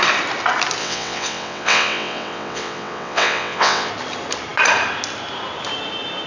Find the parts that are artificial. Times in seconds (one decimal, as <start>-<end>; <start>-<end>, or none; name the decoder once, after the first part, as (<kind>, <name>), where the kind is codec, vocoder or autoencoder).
0.8-3.9 (vocoder, WaveNeXt)